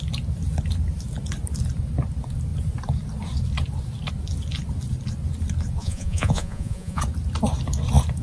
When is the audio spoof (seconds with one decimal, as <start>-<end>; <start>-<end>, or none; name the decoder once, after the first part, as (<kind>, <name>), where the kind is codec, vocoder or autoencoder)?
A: 5.8-7.0 (vocoder, Vocos)